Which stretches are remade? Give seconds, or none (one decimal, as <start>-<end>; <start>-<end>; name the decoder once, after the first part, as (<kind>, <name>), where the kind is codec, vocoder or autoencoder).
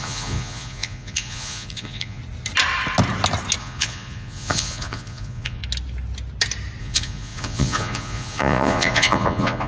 0.0-2.2 (vocoder, Vocos); 3.6-5.6; 6.8-9.7